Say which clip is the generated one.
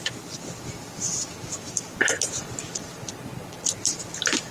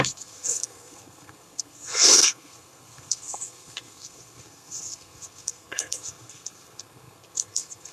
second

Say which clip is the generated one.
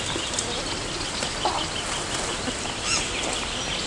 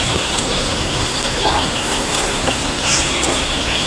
second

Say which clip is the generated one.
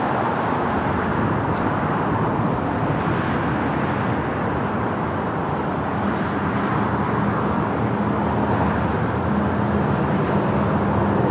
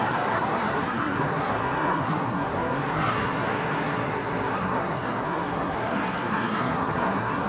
second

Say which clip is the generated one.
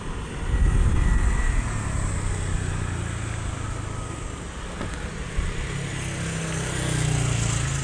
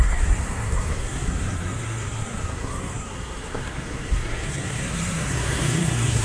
second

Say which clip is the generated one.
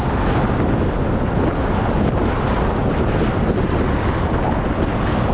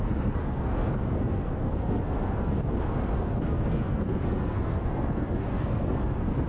second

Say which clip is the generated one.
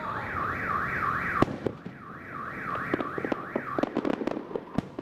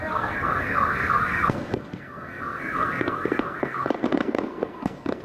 second